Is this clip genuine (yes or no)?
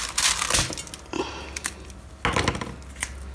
yes